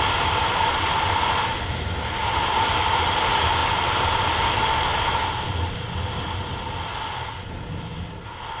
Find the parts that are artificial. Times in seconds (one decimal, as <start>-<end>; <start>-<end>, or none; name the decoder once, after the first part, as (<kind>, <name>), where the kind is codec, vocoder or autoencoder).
none